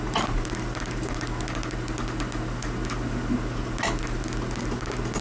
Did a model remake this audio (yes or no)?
no